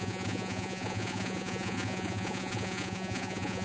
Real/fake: fake